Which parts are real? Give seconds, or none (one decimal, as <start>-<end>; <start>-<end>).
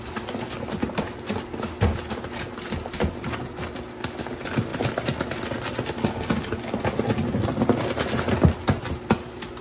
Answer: 0.0-9.6